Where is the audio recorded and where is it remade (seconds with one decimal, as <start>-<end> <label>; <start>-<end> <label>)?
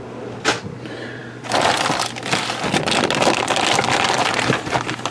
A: 0.0-5.1 recorded